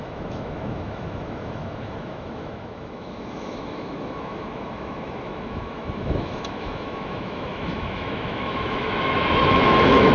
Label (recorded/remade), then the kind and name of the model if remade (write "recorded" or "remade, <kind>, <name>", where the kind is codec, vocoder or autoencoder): remade, autoencoder, DAC-VAE